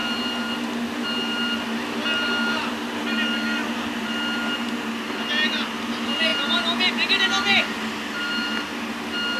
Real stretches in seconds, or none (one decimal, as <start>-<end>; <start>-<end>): 0.0-9.4